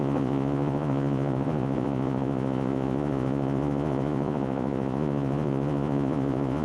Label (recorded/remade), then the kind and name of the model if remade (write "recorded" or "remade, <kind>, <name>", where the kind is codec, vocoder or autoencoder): remade, vocoder, Vocos